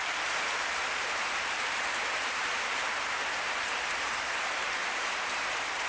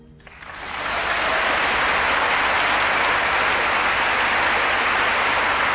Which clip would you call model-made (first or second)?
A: first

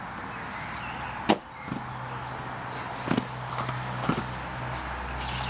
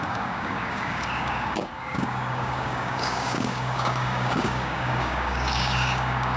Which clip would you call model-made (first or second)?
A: second